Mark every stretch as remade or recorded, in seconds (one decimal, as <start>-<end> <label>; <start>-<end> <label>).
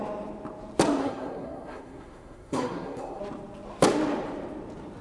0.0-1.0 recorded; 1.0-3.2 remade; 3.2-5.0 recorded